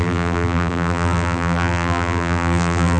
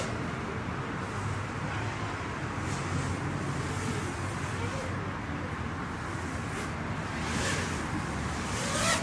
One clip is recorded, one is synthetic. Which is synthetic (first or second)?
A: first